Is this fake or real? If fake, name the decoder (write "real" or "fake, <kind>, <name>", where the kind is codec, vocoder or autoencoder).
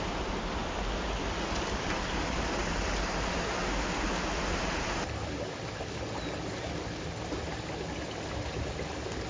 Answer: real